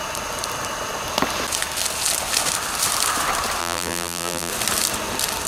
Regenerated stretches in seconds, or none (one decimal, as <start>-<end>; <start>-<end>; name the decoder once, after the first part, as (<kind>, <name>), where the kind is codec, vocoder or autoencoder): 3.6-4.5 (vocoder, BigVGAN v2)